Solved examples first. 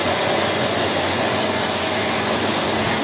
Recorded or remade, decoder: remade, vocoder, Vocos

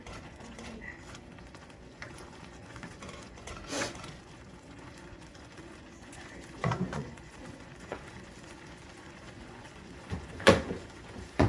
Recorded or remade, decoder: remade, vocoder, Vocos